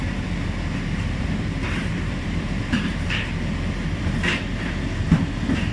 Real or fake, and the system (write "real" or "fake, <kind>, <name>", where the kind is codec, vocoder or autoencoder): fake, vocoder, BigVGAN v2